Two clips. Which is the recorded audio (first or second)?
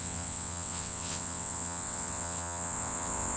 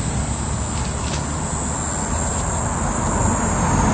second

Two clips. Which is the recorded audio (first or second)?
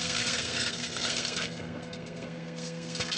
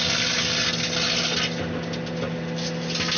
second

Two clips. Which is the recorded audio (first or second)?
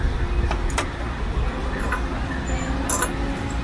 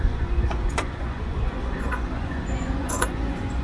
first